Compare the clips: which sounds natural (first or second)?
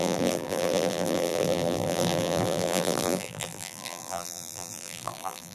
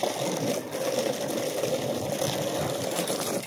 second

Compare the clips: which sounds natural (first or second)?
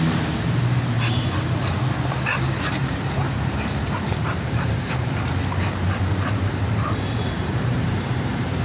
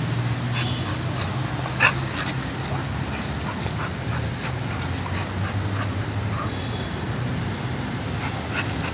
second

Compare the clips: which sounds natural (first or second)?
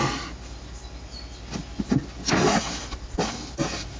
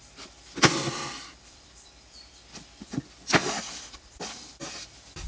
first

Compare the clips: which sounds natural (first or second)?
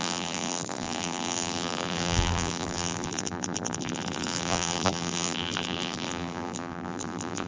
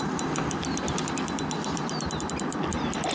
second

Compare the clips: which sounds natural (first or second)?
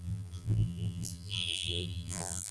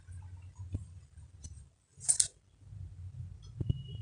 second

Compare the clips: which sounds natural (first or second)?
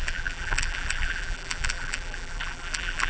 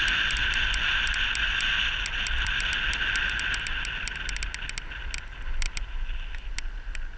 second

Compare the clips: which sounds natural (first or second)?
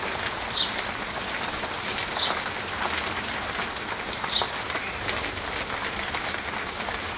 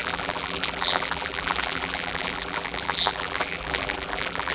first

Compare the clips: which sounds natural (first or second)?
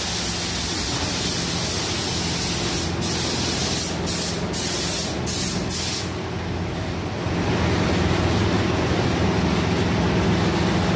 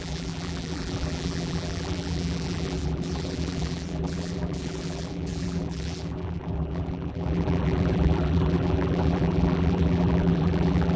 first